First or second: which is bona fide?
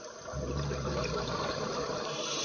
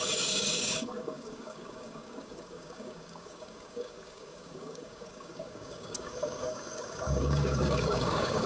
first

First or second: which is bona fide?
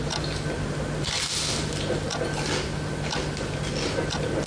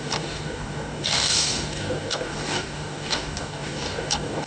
first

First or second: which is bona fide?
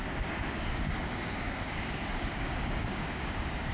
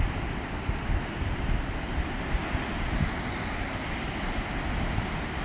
second